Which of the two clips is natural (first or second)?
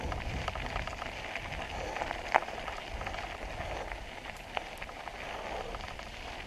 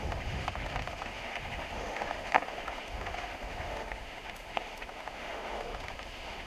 first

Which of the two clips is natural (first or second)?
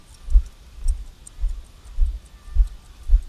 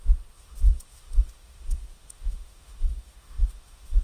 first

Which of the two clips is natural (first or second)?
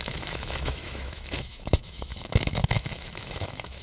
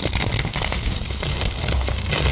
second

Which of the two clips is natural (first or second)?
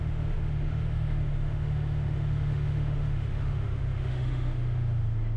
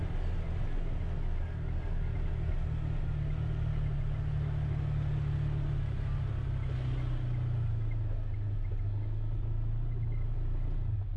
second